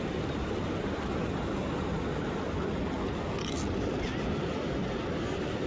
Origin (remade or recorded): recorded